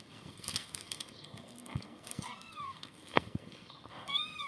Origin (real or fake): fake